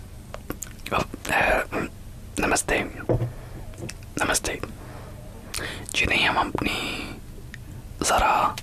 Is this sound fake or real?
real